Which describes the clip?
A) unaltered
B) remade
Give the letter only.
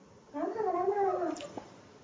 B